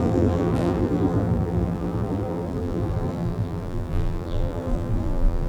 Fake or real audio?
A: fake